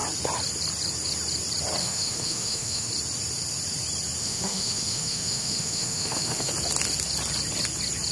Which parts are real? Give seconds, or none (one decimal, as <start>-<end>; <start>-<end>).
0.0-1.8; 2.9-4.2; 6.5-8.1